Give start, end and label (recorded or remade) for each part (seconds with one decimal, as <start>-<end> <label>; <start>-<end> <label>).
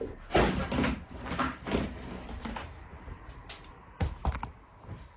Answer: 0.0-0.6 recorded; 0.6-3.7 remade; 3.7-5.2 recorded